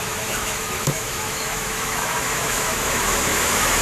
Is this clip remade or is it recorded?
remade